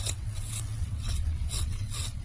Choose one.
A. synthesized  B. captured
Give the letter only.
A